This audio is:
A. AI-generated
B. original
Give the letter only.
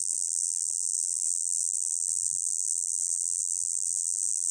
A